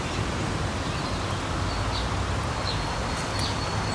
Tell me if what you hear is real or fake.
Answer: real